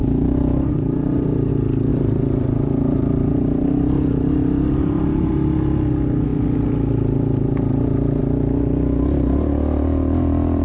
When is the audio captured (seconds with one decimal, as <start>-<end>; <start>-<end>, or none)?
1.5-1.9; 5.3-10.6